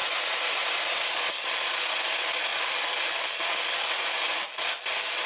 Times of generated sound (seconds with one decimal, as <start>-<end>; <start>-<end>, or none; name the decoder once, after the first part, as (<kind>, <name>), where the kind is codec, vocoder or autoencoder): 0.0-1.7 (vocoder, BigVGAN v2); 2.5-3.6